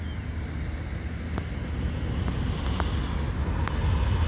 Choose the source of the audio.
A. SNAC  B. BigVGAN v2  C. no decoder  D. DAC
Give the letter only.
C